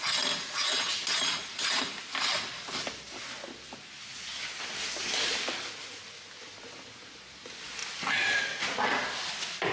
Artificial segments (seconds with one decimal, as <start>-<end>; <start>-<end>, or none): 7.8-8.3